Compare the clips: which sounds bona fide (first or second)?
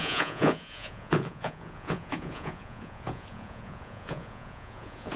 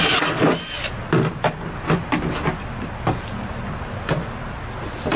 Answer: second